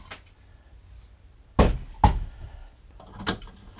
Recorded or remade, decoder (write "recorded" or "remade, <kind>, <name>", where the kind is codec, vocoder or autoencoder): recorded